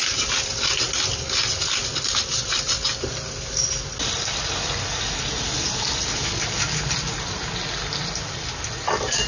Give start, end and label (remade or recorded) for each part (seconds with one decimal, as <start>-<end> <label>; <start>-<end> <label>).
0.0-9.3 recorded